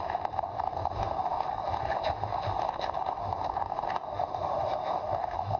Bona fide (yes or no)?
no